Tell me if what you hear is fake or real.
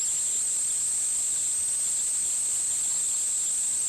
real